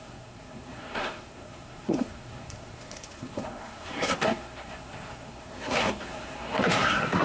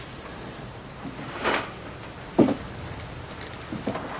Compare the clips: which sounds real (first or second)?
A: second